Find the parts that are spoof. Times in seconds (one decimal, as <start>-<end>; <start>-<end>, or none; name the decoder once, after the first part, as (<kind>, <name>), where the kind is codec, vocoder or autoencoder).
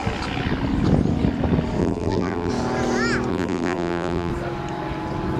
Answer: 1.8-2.5 (vocoder, BigVGAN v2); 3.3-4.3